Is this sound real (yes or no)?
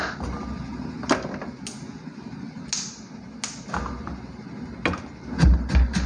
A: yes